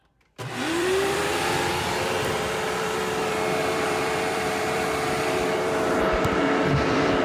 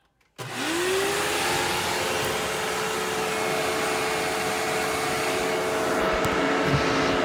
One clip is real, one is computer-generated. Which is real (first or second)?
second